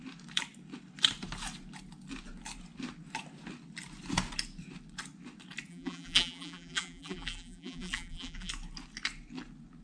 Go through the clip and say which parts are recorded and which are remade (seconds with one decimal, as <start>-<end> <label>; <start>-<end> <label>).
0.0-5.7 recorded; 5.7-8.5 remade; 8.5-9.8 recorded